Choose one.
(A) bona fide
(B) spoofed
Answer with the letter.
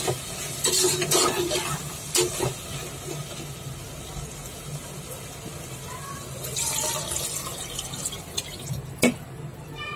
A